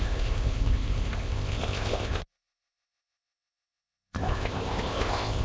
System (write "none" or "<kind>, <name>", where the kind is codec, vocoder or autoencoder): codec, ZipCodec